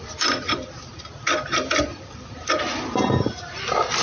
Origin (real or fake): fake